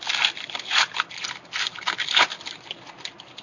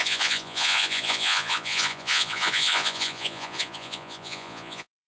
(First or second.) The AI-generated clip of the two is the second